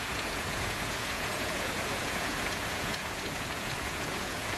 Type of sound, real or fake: fake